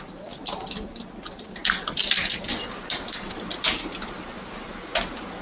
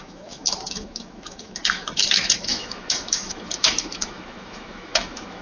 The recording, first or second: first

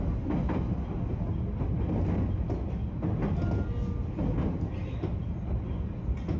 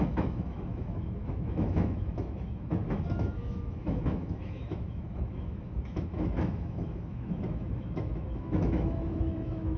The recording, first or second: first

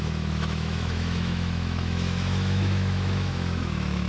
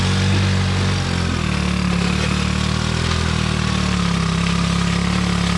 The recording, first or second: second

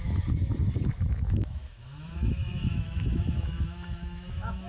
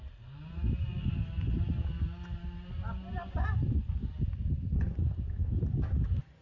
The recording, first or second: second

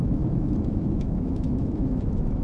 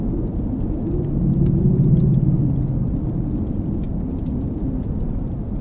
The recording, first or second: second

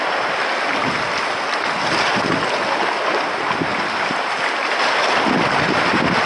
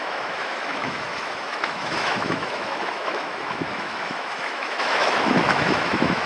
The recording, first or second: first